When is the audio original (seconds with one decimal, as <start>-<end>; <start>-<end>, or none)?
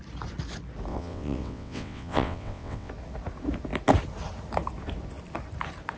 0.0-0.9; 2.9-6.0